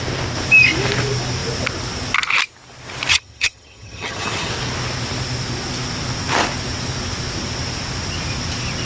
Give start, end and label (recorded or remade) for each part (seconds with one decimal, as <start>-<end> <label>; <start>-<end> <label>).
0.0-3.1 recorded; 3.1-4.5 remade; 4.5-8.9 recorded